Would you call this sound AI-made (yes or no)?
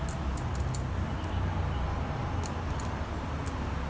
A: no